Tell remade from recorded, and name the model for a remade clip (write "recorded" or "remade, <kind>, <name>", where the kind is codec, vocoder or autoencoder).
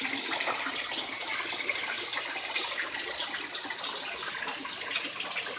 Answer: recorded